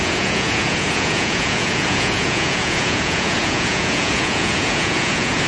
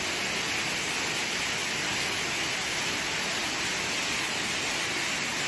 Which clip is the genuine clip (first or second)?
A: second